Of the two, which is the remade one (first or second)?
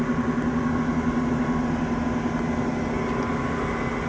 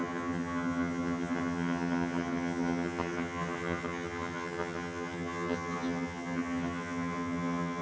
second